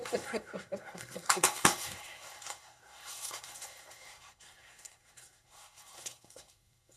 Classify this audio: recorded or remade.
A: remade